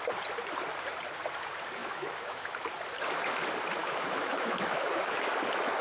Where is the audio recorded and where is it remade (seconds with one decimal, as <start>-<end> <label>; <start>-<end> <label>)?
0.0-1.8 recorded; 1.8-2.6 remade; 2.6-3.8 recorded; 3.8-5.3 remade; 5.3-5.8 recorded